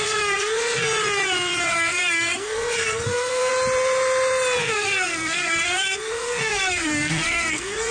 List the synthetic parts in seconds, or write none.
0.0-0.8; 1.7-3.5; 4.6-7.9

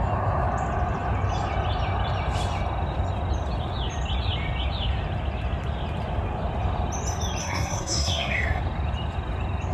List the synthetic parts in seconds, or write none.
7.4-8.6

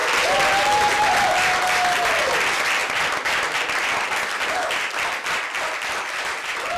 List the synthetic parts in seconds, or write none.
none

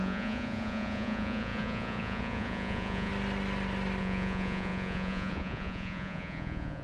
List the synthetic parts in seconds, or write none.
0.0-3.1; 4.0-6.8

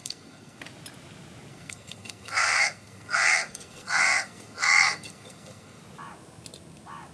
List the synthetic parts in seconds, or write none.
0.0-0.6; 1.5-5.8